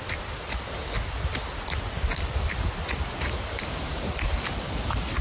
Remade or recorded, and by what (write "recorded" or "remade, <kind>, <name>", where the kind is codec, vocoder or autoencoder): recorded